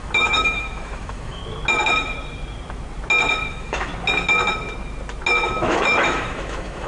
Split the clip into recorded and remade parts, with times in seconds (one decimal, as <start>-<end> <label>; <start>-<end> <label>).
0.0-1.4 remade; 1.4-3.5 recorded; 3.5-3.9 remade; 3.9-5.4 recorded; 5.4-6.9 remade